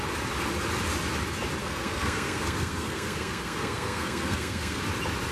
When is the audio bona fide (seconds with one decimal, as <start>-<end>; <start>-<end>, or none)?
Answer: 0.0-1.6; 4.8-5.3